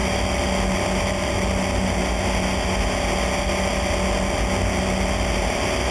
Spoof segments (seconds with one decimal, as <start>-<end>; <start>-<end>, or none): none